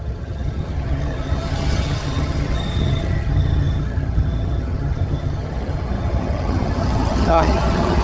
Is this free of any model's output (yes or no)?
no